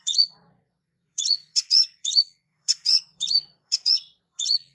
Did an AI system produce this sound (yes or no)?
yes